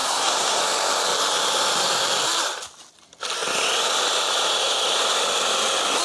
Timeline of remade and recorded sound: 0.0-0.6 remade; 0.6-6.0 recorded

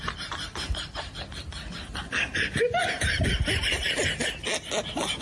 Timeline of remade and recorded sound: 0.0-2.8 recorded; 2.8-4.0 remade; 4.0-5.2 recorded

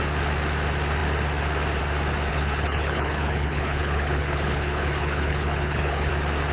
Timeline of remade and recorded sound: 0.0-2.3 recorded; 2.3-6.1 remade; 6.1-6.5 recorded